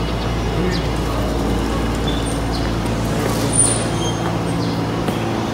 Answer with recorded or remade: recorded